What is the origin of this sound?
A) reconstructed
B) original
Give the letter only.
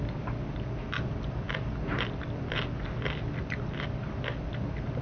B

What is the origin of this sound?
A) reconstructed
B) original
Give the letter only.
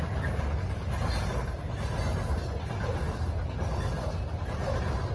B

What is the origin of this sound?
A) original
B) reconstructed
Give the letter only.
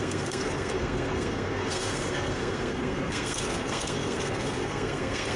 B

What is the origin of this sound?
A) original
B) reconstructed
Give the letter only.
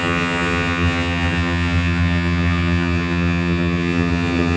B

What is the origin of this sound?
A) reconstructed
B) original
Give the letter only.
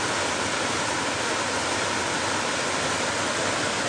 B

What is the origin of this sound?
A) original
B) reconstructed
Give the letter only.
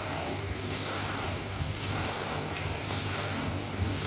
B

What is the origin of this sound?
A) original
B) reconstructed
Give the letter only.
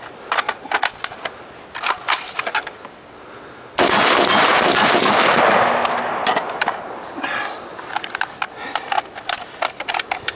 A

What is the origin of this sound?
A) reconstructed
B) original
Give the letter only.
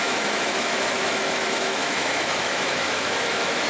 A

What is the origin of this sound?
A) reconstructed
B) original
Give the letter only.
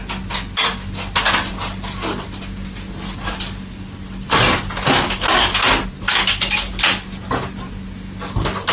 B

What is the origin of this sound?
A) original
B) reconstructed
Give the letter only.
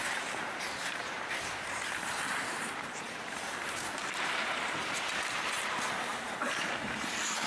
B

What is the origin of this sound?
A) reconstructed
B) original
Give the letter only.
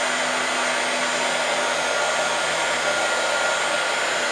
B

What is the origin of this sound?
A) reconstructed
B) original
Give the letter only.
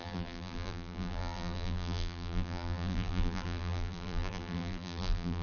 A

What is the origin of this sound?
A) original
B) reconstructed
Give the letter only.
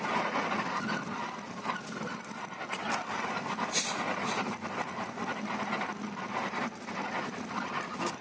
A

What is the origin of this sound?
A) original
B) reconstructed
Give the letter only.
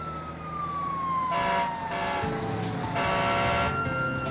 A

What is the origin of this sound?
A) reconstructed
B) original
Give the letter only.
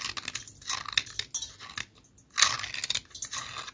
B